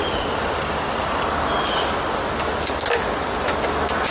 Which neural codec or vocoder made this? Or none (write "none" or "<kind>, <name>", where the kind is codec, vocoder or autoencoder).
none